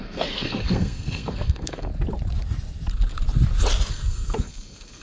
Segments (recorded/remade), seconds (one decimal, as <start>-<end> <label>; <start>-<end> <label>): 0.0-1.9 remade; 1.9-3.9 recorded; 3.9-5.0 remade